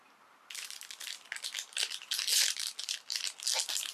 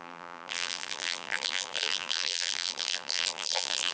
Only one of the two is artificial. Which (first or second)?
second